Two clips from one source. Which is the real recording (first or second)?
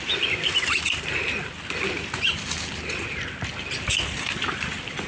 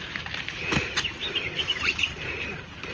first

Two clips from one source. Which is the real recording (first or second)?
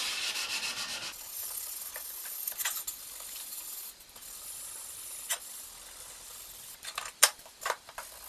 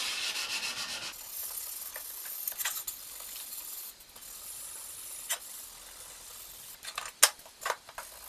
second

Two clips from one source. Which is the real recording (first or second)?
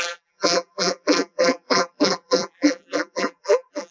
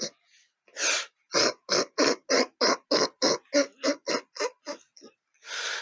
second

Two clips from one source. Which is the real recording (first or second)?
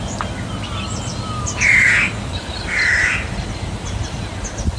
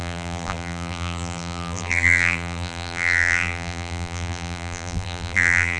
first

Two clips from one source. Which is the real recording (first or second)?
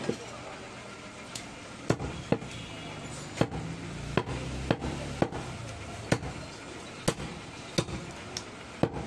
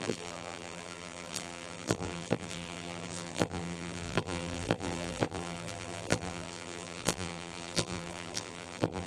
first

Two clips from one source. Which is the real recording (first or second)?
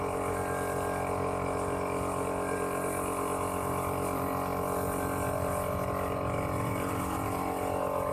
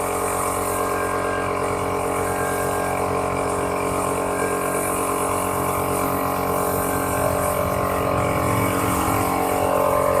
second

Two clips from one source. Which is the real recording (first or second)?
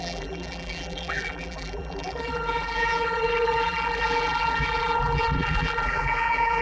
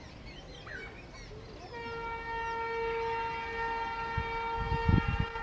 second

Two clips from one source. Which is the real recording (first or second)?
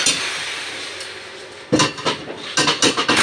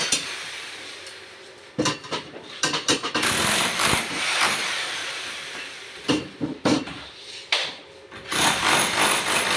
first